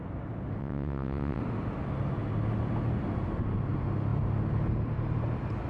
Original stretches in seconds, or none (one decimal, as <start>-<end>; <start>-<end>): 0.0-0.6; 1.4-5.7

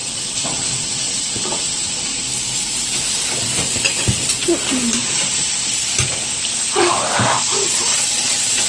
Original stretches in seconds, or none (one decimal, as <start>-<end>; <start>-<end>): 1.9-7.9

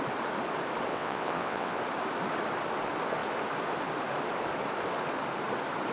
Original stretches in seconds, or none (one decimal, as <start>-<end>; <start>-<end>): 0.0-0.9; 1.8-5.9

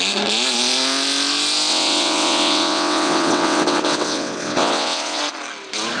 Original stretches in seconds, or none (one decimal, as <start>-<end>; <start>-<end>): 0.0-1.7; 5.2-6.0

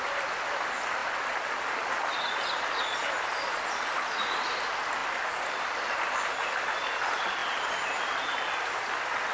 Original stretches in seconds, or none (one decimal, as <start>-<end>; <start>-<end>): 0.0-9.3